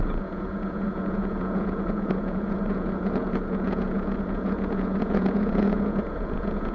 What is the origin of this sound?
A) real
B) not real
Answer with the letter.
B